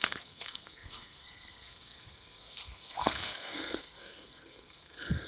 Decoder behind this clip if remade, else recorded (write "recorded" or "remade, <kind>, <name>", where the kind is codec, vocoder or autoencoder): remade, codec, SNAC